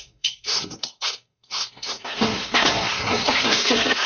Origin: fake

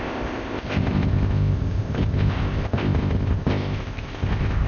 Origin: fake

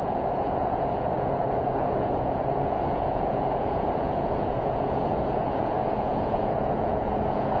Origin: fake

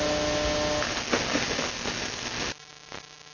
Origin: real